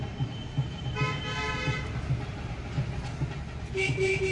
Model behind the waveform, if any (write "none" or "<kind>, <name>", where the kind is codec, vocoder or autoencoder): none